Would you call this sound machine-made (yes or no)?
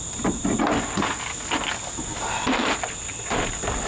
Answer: no